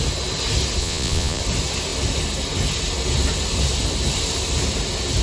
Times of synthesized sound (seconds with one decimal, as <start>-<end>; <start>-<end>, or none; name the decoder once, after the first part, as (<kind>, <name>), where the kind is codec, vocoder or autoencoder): 0.8-1.4 (vocoder, Vocos)